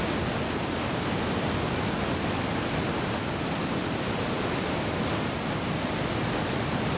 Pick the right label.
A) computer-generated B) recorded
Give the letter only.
B